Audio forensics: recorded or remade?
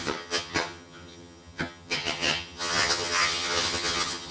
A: remade